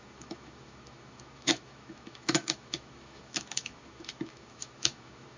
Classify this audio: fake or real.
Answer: fake